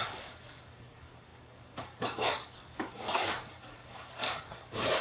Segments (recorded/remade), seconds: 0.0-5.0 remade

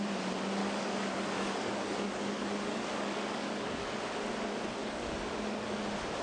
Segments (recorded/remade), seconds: 0.0-0.6 recorded; 0.6-4.0 remade; 4.0-4.8 recorded; 4.8-5.8 remade; 5.8-6.2 recorded

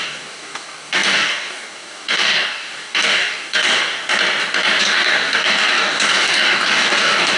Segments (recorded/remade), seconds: 0.0-4.0 remade; 4.0-4.8 recorded; 4.8-7.4 remade

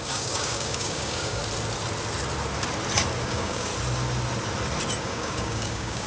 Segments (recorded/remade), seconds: 0.0-1.4 remade; 1.4-3.2 recorded; 3.2-3.7 remade; 3.7-5.0 recorded; 5.0-6.1 remade

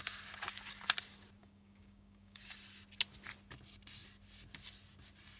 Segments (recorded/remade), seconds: 0.0-1.4 recorded; 1.4-2.5 remade; 2.5-5.4 recorded

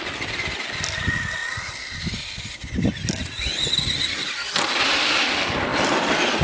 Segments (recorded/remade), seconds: 0.0-6.4 recorded

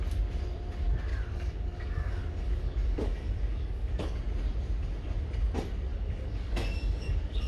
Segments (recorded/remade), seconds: 0.0-1.1 recorded; 1.1-4.2 remade; 4.2-5.9 recorded; 5.9-7.5 remade

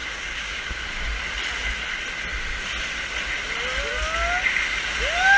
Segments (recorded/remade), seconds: 0.0-0.6 remade; 0.6-5.4 recorded